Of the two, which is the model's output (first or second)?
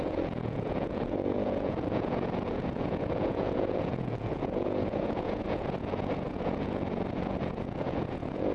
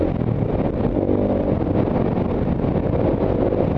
first